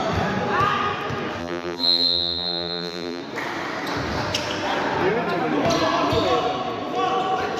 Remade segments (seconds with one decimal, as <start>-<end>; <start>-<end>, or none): 1.4-3.2